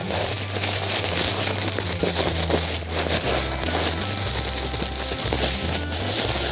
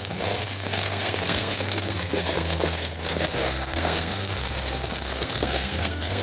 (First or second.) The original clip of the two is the first